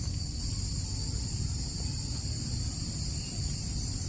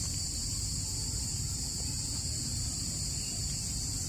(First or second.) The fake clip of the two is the second